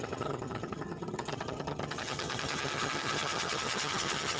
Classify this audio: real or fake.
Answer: fake